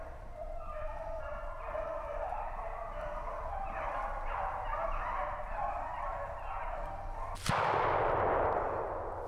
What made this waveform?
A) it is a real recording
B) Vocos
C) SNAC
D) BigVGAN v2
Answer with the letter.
A